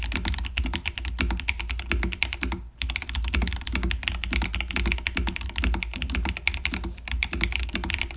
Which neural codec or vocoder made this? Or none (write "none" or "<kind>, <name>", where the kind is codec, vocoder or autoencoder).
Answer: none